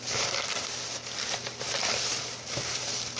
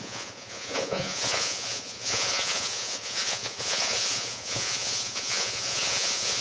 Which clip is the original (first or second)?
first